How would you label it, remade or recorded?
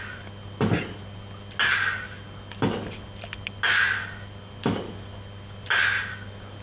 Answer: recorded